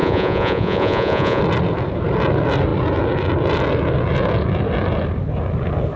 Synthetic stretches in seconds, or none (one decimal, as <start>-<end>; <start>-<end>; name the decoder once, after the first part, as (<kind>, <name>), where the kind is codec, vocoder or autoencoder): 0.0-1.4 (vocoder, Vocos)